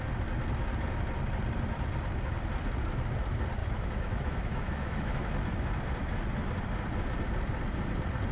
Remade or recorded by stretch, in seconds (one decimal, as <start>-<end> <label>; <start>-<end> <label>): 0.0-3.6 recorded; 3.6-5.2 remade; 5.2-8.3 recorded